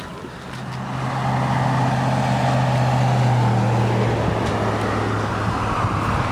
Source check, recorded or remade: recorded